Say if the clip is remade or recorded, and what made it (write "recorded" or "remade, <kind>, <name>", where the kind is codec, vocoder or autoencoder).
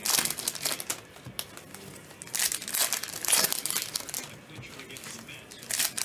recorded